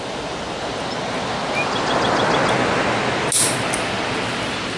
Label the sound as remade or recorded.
recorded